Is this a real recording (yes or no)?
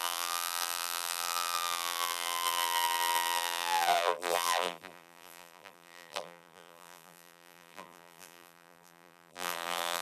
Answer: no